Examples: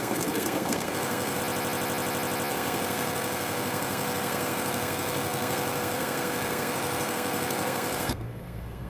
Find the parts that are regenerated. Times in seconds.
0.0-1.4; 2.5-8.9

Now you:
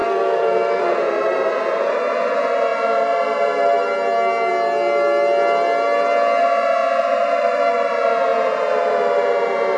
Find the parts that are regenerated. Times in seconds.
0.0-0.8